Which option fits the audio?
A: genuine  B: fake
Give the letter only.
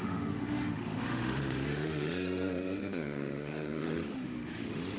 B